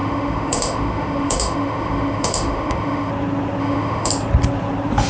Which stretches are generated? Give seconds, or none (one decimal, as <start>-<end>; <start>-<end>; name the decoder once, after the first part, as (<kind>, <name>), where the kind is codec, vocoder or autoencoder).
0.0-3.1 (autoencoder, DAC-VAE); 3.6-4.1